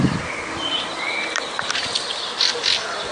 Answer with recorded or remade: remade